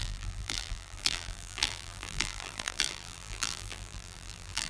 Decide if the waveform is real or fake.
fake